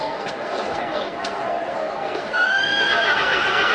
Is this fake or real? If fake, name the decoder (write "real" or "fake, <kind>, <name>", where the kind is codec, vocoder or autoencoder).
fake, codec, SNAC